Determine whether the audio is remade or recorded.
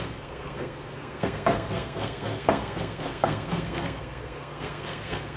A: remade